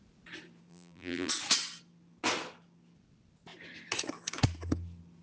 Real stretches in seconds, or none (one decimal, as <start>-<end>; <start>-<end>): 0.0-0.7; 1.3-5.2